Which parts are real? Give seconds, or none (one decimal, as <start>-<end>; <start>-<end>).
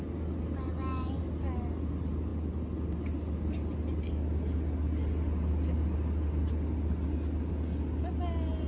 0.0-8.7